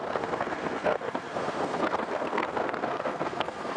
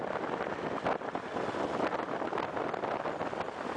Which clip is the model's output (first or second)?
first